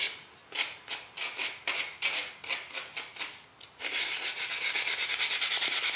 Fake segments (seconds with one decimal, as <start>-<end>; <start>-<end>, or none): none